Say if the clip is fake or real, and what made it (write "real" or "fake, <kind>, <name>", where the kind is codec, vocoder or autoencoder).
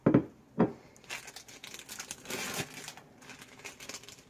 real